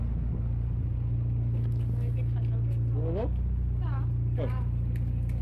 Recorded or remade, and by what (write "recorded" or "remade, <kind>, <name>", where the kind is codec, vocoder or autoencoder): recorded